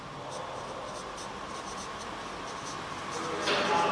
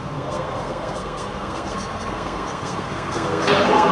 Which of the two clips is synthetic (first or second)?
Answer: second